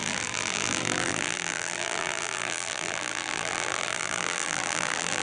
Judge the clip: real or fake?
fake